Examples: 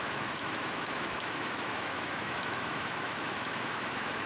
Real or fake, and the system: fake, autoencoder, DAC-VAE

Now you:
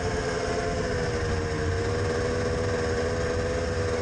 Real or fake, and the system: real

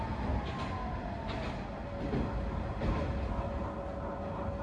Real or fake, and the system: real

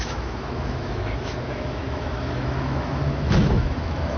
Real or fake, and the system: fake, autoencoder, DAC-VAE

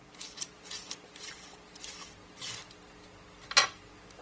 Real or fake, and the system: real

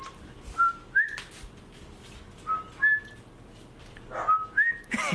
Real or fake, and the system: real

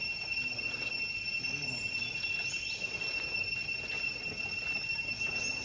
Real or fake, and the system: real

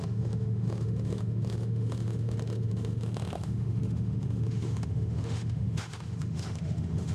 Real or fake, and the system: fake, autoencoder, DAC-VAE